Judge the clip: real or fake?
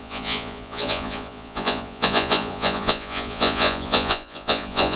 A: fake